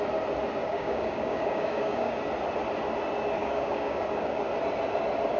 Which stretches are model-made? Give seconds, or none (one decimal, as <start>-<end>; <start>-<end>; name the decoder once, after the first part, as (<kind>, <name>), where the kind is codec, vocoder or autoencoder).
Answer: 0.6-2.2 (codec, DAC); 3.4-4.4

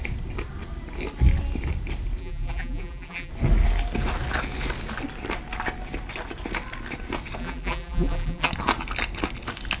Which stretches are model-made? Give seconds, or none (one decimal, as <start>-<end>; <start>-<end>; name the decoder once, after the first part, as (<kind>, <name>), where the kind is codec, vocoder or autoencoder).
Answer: 2.2-3.3 (vocoder, BigVGAN v2); 7.4-8.5

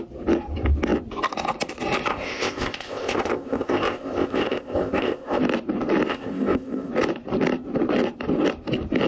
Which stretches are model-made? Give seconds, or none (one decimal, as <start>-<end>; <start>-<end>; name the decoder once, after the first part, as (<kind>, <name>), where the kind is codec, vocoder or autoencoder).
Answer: 2.1-5.4 (codec, ZipCodec); 6.1-6.9

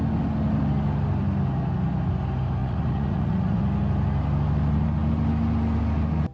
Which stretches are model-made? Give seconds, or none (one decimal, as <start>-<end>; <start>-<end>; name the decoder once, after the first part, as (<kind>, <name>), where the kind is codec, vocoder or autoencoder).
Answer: 2.6-3.6 (vocoder, Vocos)

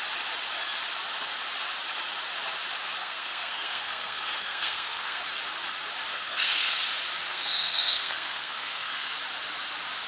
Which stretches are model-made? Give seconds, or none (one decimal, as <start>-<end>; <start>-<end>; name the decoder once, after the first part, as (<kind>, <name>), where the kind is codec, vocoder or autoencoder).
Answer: 3.0-5.2 (codec, SNAC); 6.1-6.8; 7.3-9.1